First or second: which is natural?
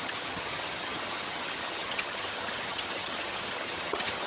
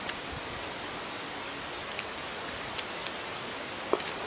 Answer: second